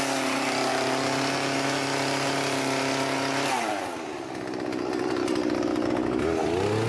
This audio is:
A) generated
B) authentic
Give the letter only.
B